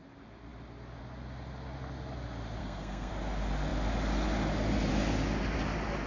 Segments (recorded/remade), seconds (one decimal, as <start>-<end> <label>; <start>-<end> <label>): 0.0-2.6 recorded; 2.6-3.1 remade; 3.1-6.1 recorded